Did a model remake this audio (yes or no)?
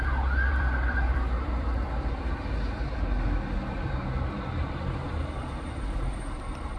yes